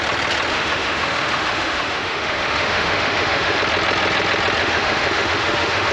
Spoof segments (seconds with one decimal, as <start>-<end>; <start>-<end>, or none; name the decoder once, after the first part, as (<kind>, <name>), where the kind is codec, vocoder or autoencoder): 0.5-3.6 (autoencoder, DAC-VAE); 4.6-5.9